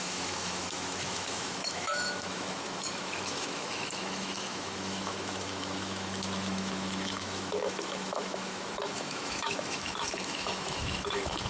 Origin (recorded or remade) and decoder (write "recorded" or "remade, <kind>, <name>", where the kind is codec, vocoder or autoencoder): remade, autoencoder, DAC-VAE